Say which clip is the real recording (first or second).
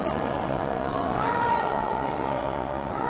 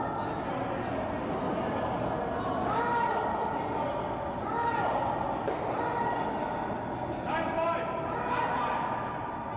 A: second